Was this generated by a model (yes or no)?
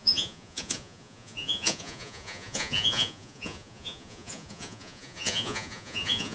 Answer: yes